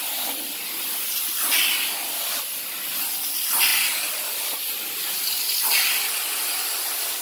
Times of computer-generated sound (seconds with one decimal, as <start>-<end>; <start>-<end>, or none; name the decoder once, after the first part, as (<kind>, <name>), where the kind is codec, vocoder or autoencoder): none